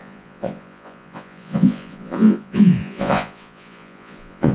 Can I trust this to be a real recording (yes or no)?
no